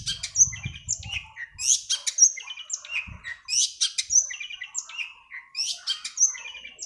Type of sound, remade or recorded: recorded